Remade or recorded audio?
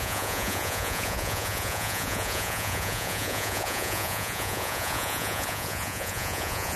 remade